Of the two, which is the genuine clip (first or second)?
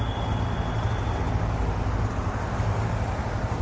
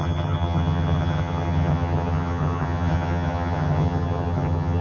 first